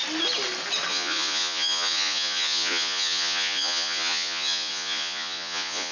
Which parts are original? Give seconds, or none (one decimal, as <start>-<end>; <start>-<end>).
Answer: 0.0-0.9